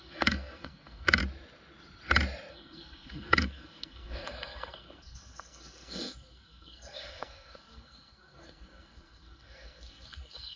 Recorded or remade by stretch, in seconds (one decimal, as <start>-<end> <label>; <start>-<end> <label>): 0.0-1.2 remade; 1.2-2.5 recorded; 2.5-10.6 remade